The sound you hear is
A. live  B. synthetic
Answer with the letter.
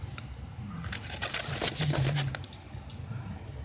A